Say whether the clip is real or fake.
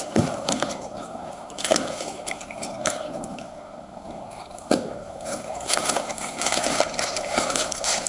fake